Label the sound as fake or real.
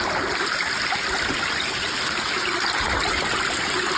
real